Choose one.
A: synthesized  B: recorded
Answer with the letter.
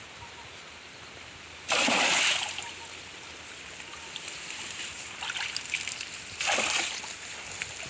B